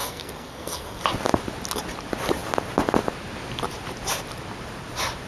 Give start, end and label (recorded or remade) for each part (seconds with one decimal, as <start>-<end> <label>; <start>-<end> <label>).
0.0-1.0 remade; 1.0-5.3 recorded